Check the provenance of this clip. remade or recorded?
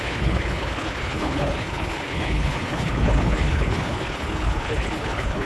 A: remade